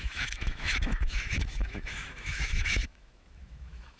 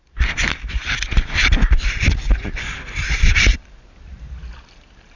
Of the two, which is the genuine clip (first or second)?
second